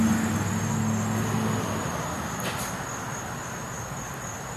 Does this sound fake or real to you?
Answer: real